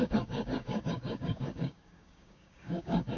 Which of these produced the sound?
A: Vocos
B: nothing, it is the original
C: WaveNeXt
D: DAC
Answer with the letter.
D